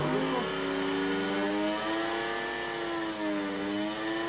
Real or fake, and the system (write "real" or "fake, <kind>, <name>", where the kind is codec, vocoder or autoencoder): real